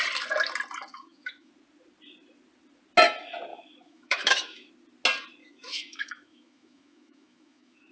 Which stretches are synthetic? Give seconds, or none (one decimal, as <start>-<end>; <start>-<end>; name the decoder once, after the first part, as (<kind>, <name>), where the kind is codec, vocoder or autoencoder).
0.9-1.5 (autoencoder, DAC-VAE); 3.5-4.7; 5.4-7.9